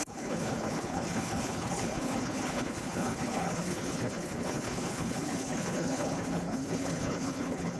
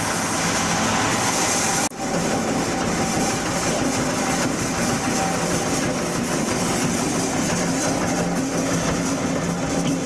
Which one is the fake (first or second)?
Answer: first